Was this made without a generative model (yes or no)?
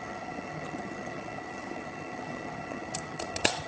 no